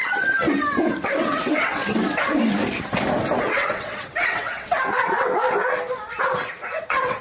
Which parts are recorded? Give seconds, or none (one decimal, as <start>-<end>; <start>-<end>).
0.0-1.2; 1.8-3.4; 5.3-6.8